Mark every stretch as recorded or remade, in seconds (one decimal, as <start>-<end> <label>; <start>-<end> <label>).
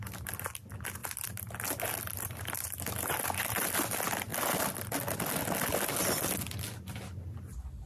0.0-7.9 recorded